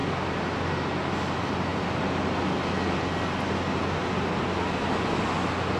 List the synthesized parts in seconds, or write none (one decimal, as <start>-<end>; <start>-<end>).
none